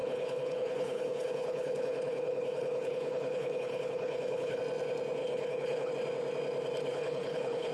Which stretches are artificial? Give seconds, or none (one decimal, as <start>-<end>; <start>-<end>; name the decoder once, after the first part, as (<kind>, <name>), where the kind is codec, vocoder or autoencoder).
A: 0.0-4.6 (codec, HILCodec); 5.2-5.9; 6.9-7.7